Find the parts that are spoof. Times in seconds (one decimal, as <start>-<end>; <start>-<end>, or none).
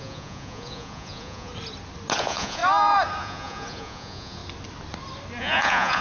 0.0-1.5; 2.2-2.6; 3.2-4.4; 5.4-6.0